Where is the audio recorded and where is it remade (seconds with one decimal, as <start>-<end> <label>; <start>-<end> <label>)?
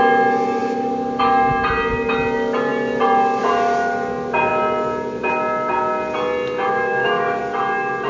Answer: 0.0-6.7 recorded; 6.7-7.4 remade; 7.4-8.1 recorded